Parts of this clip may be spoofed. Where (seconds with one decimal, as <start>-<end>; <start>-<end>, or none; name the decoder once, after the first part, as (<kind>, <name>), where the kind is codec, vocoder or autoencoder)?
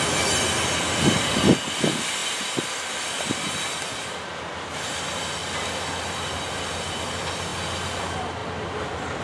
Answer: none